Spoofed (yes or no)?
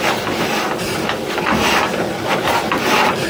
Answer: no